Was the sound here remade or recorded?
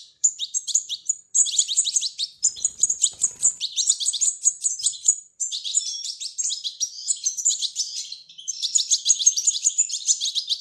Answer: remade